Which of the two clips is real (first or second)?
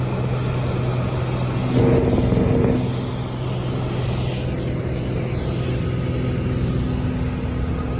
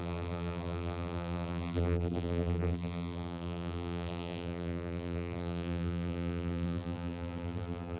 first